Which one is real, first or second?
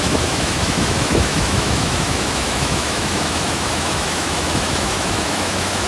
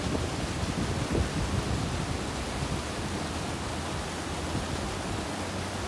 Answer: second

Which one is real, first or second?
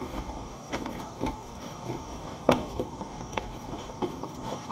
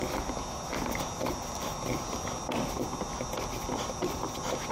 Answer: second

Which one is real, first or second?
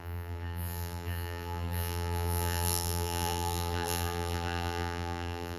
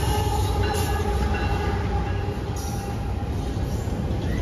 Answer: second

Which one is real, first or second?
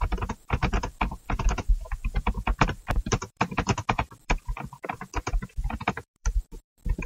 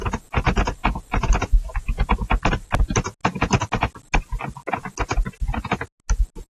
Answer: second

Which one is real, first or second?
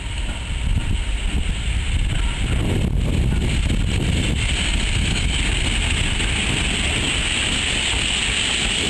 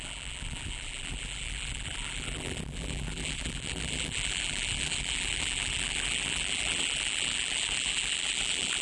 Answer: first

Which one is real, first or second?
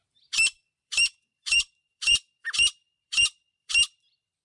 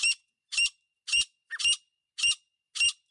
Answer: second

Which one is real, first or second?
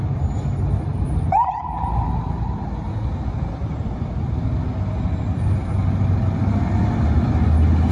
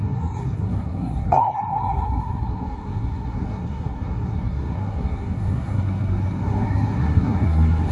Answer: first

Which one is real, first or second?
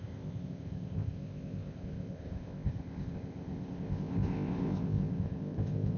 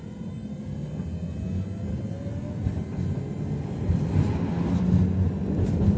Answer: second